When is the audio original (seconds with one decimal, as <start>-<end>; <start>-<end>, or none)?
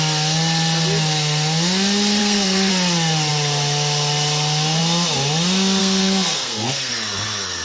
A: 0.0-2.2; 2.7-5.8; 6.9-7.6